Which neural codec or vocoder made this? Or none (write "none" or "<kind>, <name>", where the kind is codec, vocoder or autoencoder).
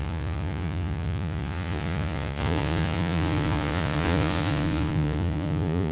vocoder, Vocos